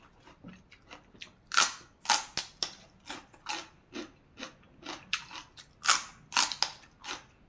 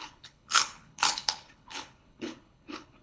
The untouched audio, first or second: first